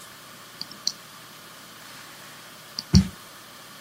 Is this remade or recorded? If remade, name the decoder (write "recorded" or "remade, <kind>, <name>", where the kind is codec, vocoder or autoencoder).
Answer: remade, vocoder, BigVGAN v2